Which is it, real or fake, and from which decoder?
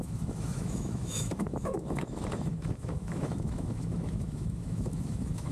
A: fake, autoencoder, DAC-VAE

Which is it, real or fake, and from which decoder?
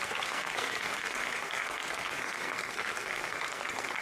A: fake, codec, SNAC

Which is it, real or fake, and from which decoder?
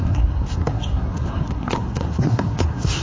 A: fake, codec, SNAC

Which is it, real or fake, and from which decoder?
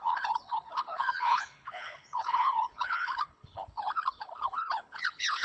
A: fake, codec, HILCodec